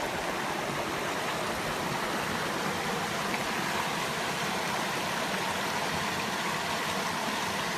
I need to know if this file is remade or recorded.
recorded